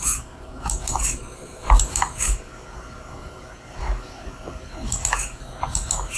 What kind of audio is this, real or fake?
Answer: fake